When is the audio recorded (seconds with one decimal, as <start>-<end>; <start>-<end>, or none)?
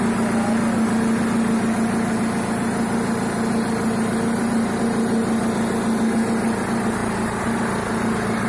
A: 0.0-8.5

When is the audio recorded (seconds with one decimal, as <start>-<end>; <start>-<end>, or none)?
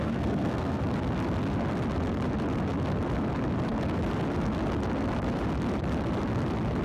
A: 0.8-6.8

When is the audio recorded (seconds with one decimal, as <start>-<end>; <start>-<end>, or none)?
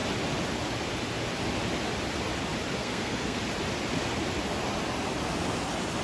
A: 0.0-2.8; 3.4-6.0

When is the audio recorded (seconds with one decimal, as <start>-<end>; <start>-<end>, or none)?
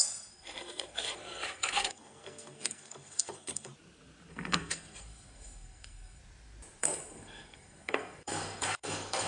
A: 3.7-4.3; 6.2-6.8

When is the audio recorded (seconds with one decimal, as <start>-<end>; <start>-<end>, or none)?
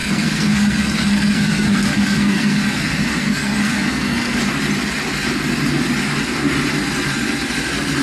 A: 4.4-8.0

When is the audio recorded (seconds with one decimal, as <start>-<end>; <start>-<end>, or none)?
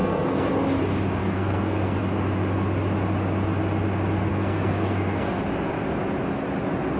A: 0.5-1.2; 2.0-4.3; 5.4-7.0